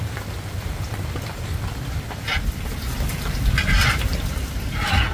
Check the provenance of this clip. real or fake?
fake